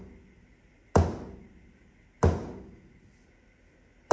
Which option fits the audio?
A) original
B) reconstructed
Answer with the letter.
A